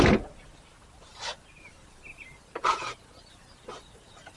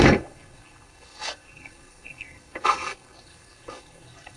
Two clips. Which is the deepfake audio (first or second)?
second